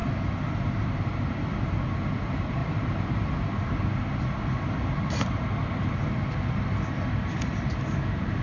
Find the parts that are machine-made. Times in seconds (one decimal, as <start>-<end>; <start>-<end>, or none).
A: 2.6-3.8